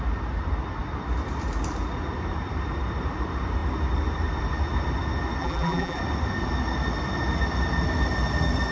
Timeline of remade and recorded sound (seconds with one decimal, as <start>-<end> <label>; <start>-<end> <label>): 0.0-5.4 recorded; 5.4-6.0 remade; 6.0-8.7 recorded